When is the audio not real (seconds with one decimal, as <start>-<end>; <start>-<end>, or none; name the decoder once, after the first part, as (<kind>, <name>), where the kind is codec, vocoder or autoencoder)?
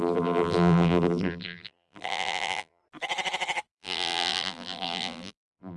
0.0-2.8 (vocoder, BigVGAN v2); 3.7-5.8